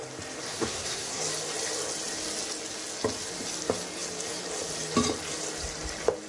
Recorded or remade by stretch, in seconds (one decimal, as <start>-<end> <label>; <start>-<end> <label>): 0.0-0.5 recorded; 0.5-1.2 remade; 1.2-6.3 recorded